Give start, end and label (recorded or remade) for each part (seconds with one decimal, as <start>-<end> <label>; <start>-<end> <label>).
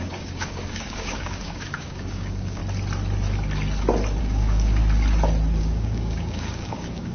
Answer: 0.0-2.6 remade; 2.6-4.2 recorded; 4.2-4.8 remade; 4.8-5.6 recorded; 5.6-7.1 remade